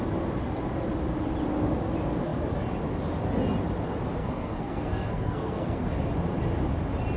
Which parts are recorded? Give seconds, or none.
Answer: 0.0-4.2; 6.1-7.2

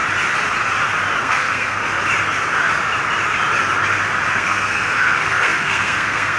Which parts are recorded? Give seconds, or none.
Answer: 0.0-1.2; 1.8-4.3

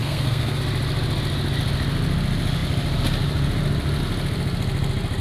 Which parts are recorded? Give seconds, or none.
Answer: 0.6-5.2

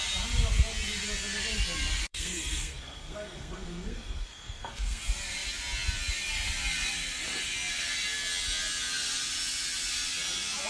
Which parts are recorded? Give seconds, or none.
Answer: 0.0-2.1; 5.0-10.7